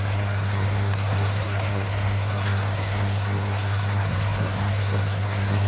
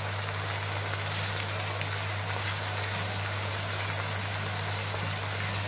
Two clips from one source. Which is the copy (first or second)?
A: first